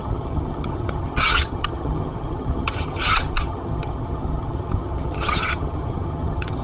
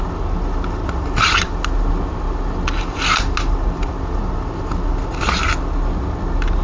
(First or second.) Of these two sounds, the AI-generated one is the first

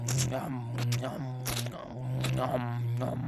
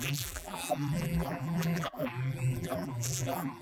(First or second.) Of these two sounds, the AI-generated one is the second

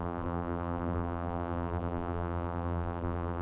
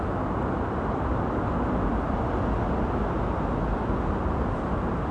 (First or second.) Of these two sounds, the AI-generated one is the first